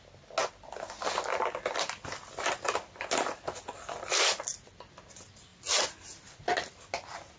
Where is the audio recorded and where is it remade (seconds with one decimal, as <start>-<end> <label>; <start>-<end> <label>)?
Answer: 0.0-7.4 recorded